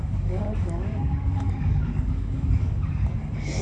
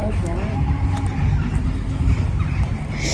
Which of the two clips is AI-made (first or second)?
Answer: first